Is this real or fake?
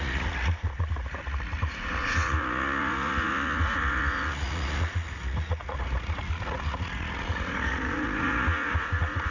fake